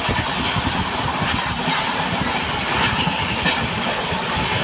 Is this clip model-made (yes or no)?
no